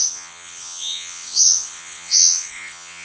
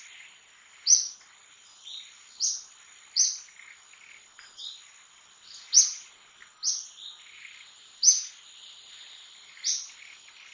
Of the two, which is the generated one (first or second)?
first